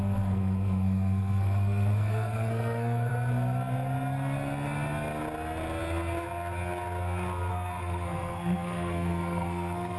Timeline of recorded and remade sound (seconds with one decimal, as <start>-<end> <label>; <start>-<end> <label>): 0.0-3.1 remade; 3.1-7.5 recorded; 7.5-10.0 remade